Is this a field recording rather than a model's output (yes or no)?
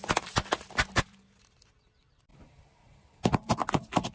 yes